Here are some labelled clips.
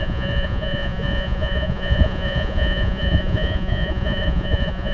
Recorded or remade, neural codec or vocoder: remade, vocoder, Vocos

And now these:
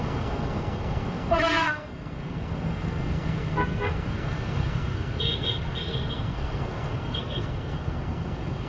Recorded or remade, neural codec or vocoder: remade, codec, SNAC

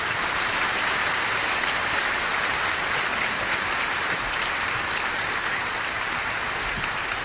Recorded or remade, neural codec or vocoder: remade, vocoder, BigVGAN v2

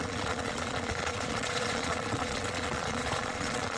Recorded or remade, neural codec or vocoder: remade, vocoder, Vocos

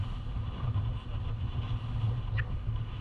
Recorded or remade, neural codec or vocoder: recorded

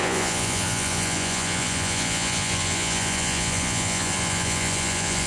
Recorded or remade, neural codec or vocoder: remade, vocoder, Vocos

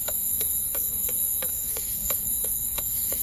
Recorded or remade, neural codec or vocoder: remade, codec, SNAC